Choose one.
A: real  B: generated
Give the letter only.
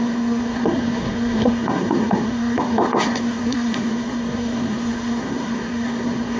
B